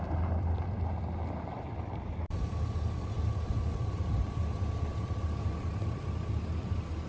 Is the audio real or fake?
fake